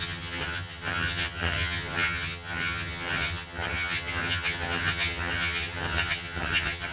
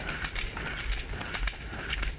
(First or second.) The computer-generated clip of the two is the first